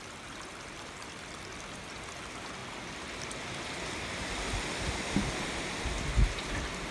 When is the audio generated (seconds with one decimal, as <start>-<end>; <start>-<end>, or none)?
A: none